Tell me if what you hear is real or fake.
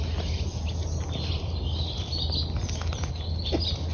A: real